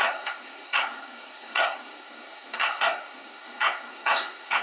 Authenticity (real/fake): fake